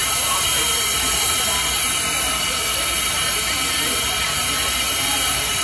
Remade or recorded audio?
recorded